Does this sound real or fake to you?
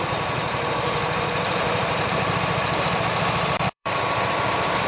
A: fake